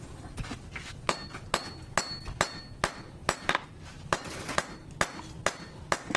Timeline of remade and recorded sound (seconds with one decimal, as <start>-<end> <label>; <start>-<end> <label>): 0.0-6.2 recorded